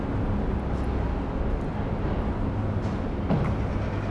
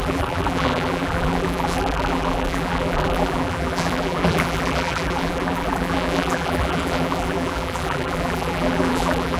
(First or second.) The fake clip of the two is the second